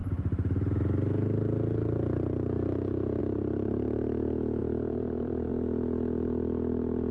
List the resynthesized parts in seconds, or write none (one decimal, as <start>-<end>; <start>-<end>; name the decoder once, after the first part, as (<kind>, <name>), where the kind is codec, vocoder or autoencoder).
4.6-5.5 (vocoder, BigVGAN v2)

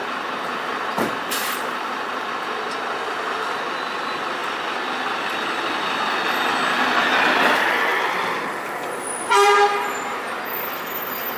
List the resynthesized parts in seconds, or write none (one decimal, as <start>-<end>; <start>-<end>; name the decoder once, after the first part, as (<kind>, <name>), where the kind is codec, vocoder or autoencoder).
0.0-2.3 (vocoder, BigVGAN v2)

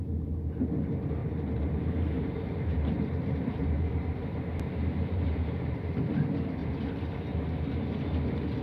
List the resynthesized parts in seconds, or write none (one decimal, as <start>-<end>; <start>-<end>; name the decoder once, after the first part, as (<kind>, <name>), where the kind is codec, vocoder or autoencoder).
1.2-5.9 (vocoder, BigVGAN v2)

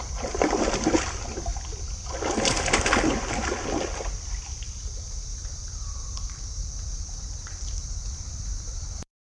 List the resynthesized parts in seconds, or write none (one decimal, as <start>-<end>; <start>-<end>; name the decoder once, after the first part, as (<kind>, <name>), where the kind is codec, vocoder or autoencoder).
0.0-1.5 (vocoder, BigVGAN v2); 4.1-9.2